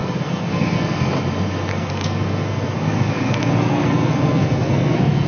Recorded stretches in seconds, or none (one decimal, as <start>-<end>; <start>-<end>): 1.1-1.7